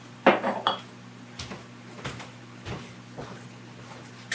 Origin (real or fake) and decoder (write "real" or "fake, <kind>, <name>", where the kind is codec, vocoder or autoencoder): real